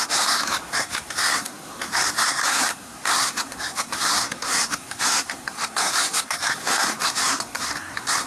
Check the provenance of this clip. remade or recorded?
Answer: remade